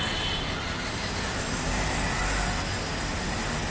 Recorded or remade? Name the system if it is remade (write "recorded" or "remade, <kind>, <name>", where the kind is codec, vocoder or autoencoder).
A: recorded